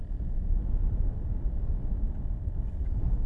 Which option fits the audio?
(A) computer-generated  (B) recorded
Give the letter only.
B